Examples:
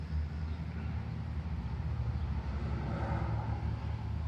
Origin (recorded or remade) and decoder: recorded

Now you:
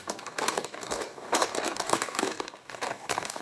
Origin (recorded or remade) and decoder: remade, codec, DAC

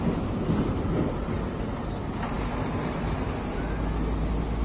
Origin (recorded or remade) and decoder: recorded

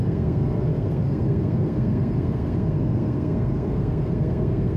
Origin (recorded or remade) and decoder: remade, codec, SNAC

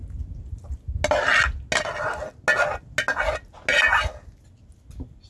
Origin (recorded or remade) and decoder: recorded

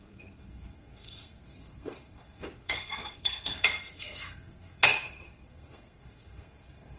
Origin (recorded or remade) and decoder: remade, codec, SNAC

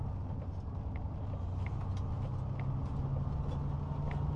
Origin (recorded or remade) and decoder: recorded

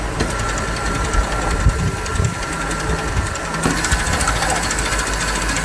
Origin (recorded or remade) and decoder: recorded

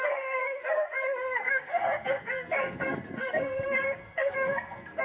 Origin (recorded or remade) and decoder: remade, codec, SNAC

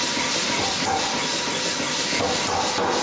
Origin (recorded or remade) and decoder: recorded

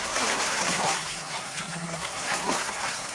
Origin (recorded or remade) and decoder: remade, codec, SNAC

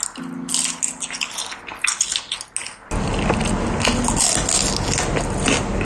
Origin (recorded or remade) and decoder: recorded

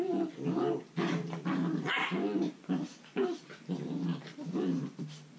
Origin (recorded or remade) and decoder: recorded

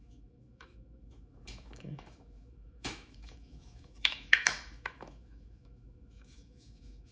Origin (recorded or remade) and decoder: remade, autoencoder, DAC-VAE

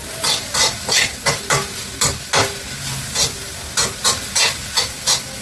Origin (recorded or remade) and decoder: recorded